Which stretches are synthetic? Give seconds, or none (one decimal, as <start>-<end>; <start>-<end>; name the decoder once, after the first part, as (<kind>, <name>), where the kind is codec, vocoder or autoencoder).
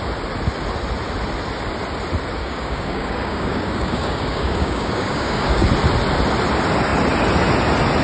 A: 2.4-5.7 (codec, DAC)